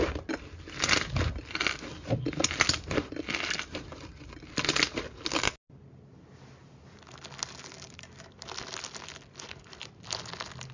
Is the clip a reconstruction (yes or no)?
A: no